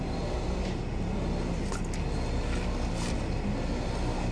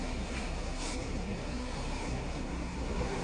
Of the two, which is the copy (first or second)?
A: second